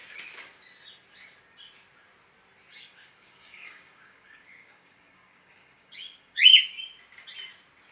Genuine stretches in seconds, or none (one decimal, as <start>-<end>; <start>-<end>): 0.0-2.7; 6.6-7.9